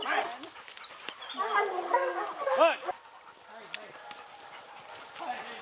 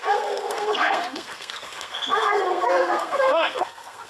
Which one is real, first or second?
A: first